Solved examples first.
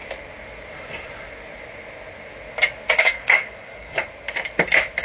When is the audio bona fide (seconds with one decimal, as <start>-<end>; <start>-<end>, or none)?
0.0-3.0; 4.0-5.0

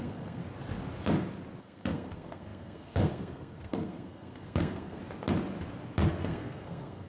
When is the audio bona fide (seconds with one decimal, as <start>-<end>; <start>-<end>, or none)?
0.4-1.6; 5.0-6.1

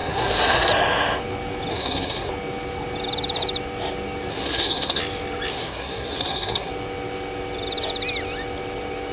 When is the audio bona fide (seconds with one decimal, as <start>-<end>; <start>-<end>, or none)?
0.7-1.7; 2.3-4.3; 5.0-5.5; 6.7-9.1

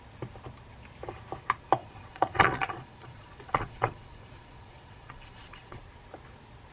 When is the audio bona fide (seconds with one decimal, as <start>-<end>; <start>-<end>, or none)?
0.0-1.8; 5.8-6.7

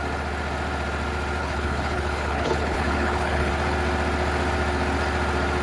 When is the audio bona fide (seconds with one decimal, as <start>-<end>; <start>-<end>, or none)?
0.0-1.4; 3.5-5.6